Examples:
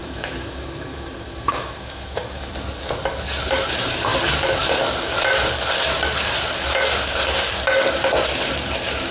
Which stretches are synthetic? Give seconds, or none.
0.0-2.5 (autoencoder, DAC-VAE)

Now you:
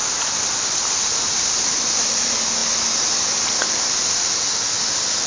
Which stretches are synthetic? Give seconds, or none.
none